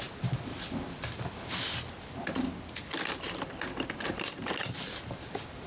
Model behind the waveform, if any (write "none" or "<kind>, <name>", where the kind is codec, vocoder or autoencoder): none